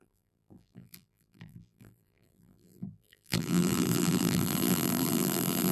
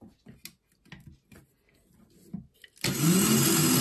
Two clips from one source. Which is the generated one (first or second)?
first